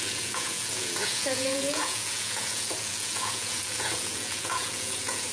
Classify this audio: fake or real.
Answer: fake